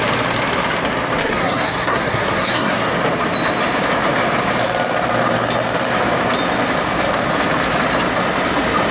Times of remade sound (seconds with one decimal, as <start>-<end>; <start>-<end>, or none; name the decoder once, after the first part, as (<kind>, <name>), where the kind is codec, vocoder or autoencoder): 1.2-2.9 (codec, SNAC)